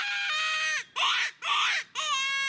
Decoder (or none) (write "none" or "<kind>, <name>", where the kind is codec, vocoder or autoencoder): none